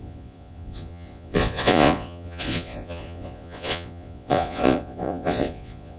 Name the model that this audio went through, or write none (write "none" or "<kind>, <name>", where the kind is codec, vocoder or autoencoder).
vocoder, Vocos